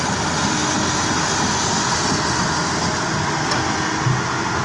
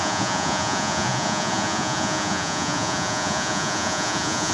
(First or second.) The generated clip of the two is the second